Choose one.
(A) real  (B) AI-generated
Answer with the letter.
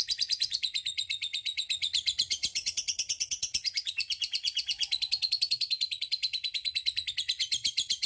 B